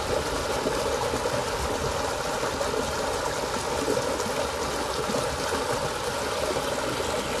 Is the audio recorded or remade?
recorded